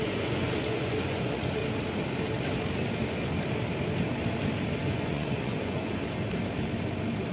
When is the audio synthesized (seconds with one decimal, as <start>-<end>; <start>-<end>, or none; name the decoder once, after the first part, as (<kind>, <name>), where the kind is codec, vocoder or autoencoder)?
0.0-1.6 (vocoder, Vocos); 4.8-6.0